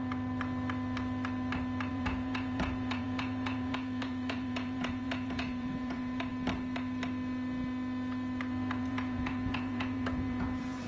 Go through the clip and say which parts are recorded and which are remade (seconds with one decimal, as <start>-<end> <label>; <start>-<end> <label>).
0.0-1.9 recorded; 1.9-6.3 remade; 6.3-8.8 recorded; 8.8-10.9 remade